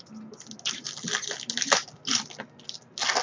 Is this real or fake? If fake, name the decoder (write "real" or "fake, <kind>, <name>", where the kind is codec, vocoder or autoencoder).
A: real